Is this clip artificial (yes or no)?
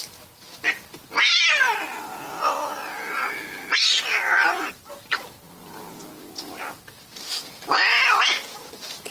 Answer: no